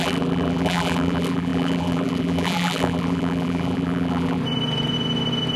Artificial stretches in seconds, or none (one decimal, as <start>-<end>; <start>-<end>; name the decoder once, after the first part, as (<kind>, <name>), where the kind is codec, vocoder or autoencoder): 0.0-4.4 (vocoder, BigVGAN v2)